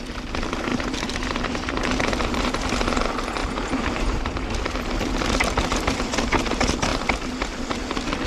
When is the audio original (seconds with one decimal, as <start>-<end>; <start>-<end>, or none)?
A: 0.0-0.7; 2.6-3.4; 4.5-8.3